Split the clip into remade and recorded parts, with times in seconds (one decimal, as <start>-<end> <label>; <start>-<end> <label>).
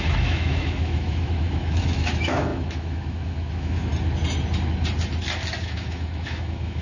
0.0-3.9 remade; 3.9-5.6 recorded; 5.6-6.8 remade